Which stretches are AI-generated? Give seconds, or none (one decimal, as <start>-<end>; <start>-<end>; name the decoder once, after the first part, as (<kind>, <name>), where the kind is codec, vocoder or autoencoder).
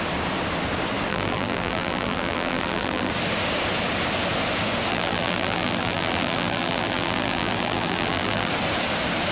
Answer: 1.1-3.1 (vocoder, BigVGAN v2); 4.9-8.5